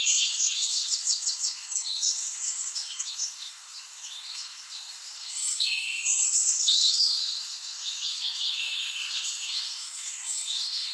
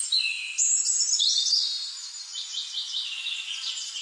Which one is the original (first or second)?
second